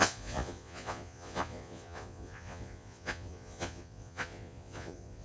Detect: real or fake fake